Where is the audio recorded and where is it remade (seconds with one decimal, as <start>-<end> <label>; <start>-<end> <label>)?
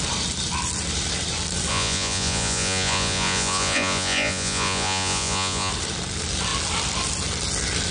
0.0-1.7 recorded; 1.7-5.7 remade; 5.7-7.9 recorded